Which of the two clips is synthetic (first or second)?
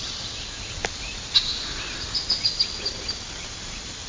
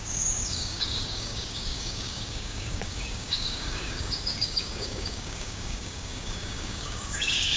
second